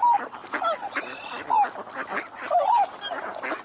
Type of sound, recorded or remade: recorded